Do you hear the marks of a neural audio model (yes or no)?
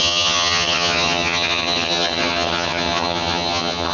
yes